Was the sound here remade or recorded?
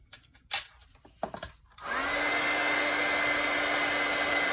recorded